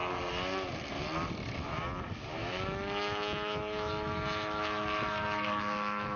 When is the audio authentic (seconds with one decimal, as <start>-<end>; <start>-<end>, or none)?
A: 0.0-2.4